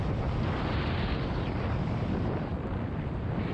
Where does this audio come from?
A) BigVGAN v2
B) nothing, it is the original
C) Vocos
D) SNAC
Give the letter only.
A